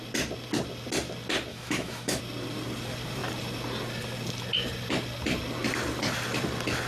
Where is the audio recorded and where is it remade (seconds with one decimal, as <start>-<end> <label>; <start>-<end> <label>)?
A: 0.0-1.5 recorded; 1.5-2.2 remade; 2.2-6.9 recorded